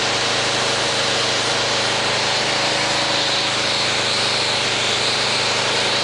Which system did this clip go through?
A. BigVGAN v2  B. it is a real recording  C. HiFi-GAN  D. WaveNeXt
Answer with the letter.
A